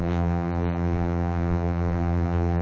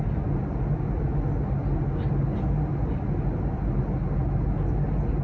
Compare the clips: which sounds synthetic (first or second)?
first